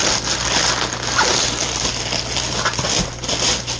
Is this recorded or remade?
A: recorded